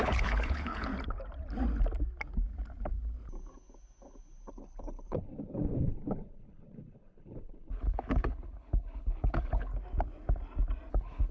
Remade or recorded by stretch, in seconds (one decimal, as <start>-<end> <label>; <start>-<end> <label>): 0.0-0.9 remade; 0.9-4.5 recorded; 4.5-9.7 remade; 9.7-10.9 recorded; 10.9-11.3 remade